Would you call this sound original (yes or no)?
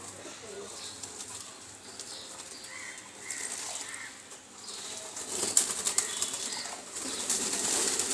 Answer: yes